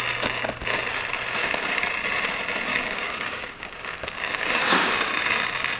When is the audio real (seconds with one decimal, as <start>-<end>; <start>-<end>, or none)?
0.0-1.4; 1.9-2.7; 4.9-5.8